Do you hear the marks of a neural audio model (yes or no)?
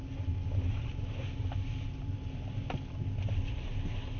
no